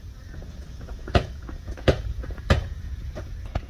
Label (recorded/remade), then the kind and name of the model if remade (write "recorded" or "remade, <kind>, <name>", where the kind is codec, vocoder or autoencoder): remade, vocoder, Vocos